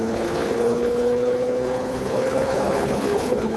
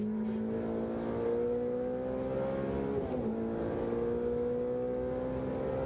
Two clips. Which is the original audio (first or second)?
second